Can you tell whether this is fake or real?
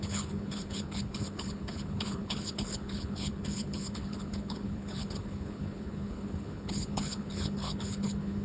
fake